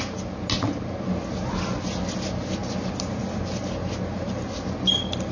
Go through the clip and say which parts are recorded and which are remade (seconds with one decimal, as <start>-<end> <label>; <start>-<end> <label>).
0.0-5.3 recorded